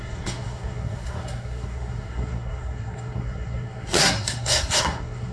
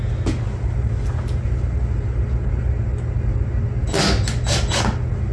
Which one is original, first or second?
second